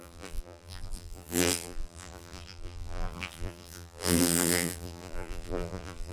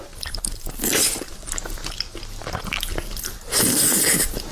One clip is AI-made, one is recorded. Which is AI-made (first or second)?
first